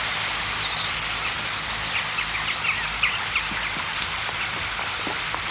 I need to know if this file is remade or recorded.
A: recorded